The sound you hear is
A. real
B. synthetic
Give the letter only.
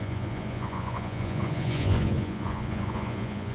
B